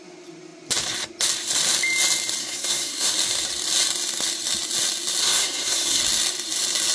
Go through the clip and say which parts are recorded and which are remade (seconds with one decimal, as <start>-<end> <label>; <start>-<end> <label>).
0.0-2.4 recorded; 2.4-3.1 remade; 3.1-5.2 recorded; 5.2-6.0 remade; 6.0-6.9 recorded